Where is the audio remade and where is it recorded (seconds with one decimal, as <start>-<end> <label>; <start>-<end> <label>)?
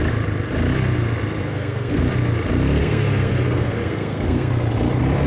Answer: 0.0-1.4 recorded; 1.4-2.0 remade; 2.0-2.8 recorded; 2.8-4.5 remade; 4.5-5.3 recorded